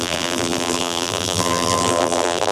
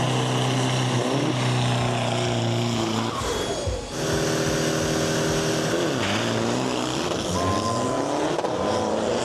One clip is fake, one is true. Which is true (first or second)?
second